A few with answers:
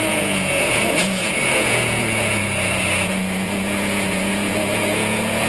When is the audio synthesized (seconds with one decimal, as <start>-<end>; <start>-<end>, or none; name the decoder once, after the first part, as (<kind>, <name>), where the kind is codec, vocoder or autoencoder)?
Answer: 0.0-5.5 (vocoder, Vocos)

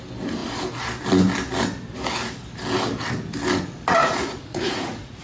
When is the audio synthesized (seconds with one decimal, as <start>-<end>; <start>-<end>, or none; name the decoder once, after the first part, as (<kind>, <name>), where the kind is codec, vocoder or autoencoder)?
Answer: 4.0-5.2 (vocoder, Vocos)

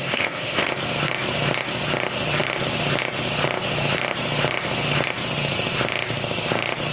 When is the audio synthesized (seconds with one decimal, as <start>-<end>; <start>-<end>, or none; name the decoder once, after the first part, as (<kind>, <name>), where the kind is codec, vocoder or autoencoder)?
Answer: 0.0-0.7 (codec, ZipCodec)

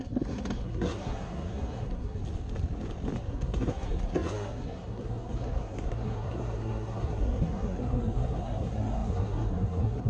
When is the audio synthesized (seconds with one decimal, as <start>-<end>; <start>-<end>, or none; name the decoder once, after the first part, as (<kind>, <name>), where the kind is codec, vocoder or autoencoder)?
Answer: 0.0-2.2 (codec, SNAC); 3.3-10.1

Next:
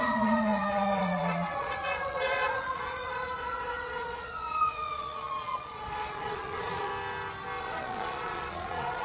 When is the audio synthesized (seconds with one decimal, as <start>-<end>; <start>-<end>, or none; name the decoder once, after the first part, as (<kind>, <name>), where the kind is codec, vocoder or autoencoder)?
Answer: 0.0-6.9 (vocoder, Vocos); 7.6-9.0

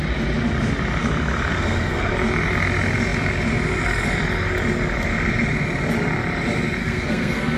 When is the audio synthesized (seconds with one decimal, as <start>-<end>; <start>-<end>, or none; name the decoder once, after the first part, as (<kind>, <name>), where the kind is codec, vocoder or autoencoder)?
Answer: 1.5-2.1 (codec, SNAC); 6.8-7.6

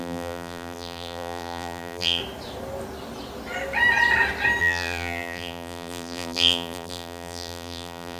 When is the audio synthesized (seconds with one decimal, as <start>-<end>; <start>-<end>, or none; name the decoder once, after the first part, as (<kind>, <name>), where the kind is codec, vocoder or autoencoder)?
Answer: 0.0-2.2 (vocoder, BigVGAN v2); 4.6-8.2